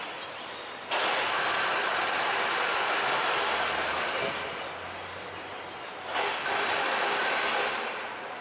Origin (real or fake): real